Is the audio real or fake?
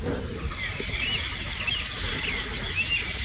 real